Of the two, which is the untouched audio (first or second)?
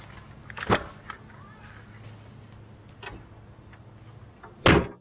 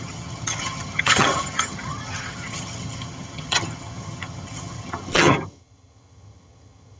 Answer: first